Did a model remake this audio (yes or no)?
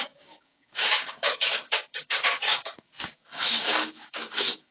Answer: yes